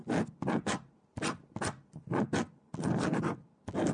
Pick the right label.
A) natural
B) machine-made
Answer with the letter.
A